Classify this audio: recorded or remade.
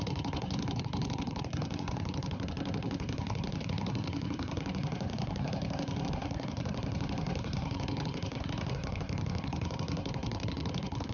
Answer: remade